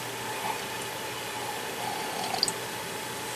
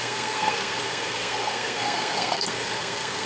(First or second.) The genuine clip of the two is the first